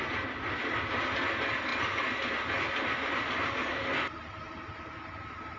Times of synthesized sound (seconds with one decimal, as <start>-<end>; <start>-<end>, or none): none